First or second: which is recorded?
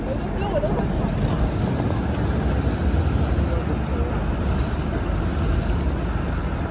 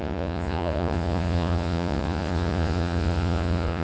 first